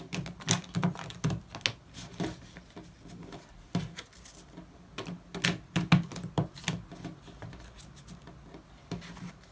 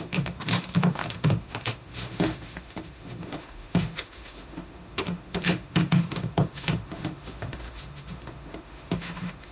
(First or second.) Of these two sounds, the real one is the first